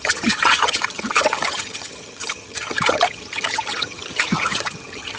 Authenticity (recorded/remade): remade